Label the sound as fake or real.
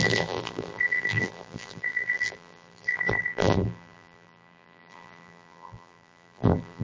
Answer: fake